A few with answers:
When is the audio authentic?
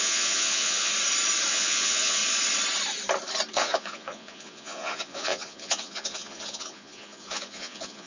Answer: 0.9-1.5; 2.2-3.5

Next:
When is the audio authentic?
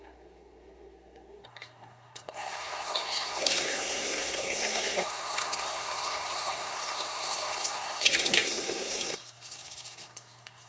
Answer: none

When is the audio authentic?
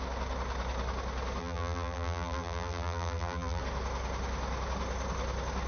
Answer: 0.0-1.4; 3.6-5.7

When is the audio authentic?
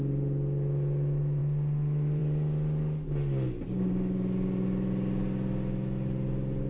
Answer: 0.0-6.7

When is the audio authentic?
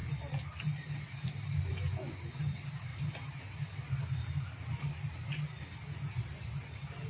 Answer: 0.0-7.1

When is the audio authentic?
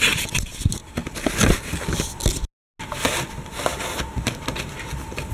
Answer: 1.0-3.3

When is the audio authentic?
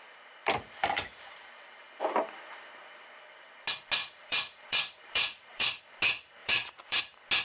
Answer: 0.0-0.4; 2.0-4.0; 5.8-6.4; 7.0-7.4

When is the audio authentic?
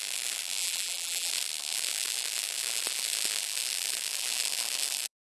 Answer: 0.0-0.6; 1.3-5.3